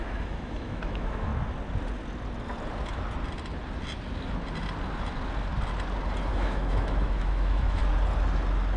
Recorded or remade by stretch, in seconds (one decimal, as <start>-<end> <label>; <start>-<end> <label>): 0.0-1.3 remade; 1.3-6.3 recorded; 6.3-7.8 remade; 7.8-8.8 recorded